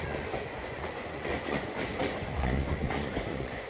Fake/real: fake